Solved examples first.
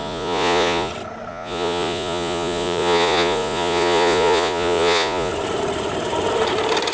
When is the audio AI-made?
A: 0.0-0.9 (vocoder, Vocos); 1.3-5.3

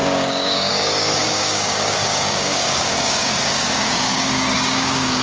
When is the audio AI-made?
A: 0.0-5.2 (codec, DAC)

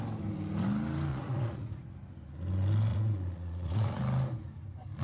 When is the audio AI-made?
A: 1.1-1.8 (vocoder, Vocos); 2.9-4.0